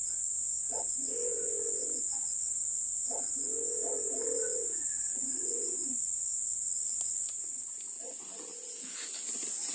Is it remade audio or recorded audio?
recorded